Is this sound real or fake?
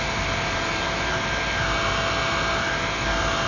real